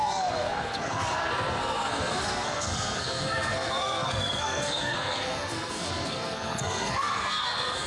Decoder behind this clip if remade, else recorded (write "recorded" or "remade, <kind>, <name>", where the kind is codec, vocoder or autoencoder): remade, codec, SNAC